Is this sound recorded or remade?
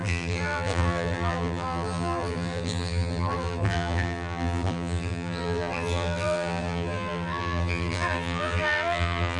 remade